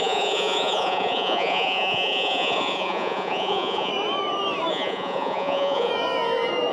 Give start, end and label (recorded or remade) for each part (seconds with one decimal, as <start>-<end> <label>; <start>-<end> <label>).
0.0-3.9 remade; 3.9-4.7 recorded; 4.7-5.9 remade; 5.9-6.7 recorded